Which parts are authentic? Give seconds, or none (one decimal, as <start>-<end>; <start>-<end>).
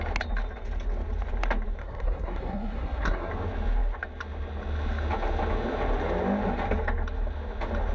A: 0.0-1.8; 3.3-7.9